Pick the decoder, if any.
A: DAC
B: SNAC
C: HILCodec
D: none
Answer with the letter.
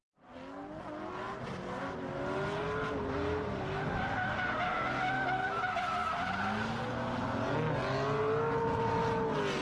D